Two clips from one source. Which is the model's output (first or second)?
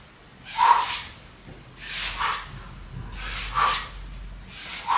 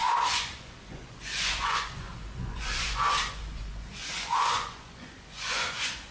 second